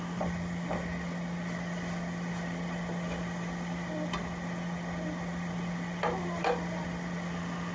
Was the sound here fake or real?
real